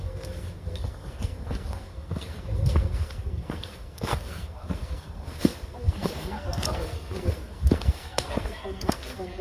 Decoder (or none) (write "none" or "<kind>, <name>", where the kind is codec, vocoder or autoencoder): codec, SNAC